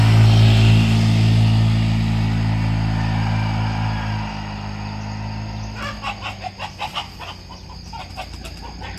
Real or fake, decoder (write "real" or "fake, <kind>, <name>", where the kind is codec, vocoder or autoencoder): real